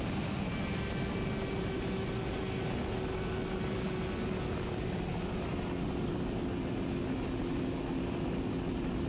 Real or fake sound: real